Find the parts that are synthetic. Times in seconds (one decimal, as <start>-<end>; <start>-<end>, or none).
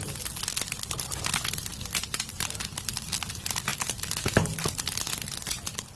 none